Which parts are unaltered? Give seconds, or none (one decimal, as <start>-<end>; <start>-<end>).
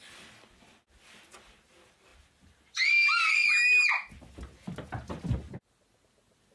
0.0-6.5